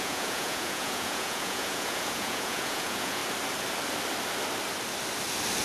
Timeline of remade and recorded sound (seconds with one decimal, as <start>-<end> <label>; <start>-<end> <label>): 0.0-3.2 remade; 3.2-5.6 recorded